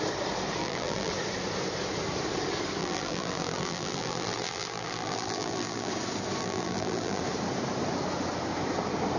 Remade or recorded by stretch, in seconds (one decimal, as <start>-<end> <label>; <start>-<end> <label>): 0.0-0.6 recorded; 0.6-1.1 remade; 1.1-2.8 recorded; 2.8-5.9 remade; 5.9-6.4 recorded; 6.4-7.2 remade; 7.2-9.2 recorded